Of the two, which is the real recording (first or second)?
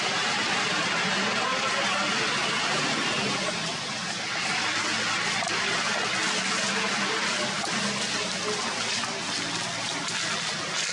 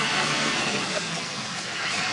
first